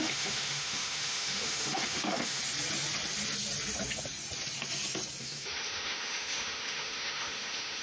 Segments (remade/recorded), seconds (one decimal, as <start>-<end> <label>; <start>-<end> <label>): 0.0-2.4 remade; 2.4-5.2 recorded; 5.2-7.8 remade